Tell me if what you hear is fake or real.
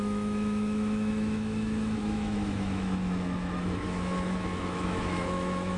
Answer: fake